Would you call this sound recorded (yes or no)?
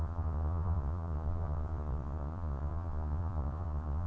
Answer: no